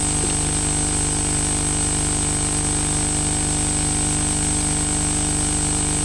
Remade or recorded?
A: recorded